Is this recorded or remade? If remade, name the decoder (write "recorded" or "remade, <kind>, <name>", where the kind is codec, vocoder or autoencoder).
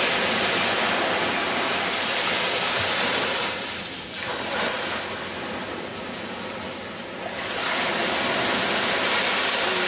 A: recorded